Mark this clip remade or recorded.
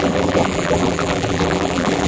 remade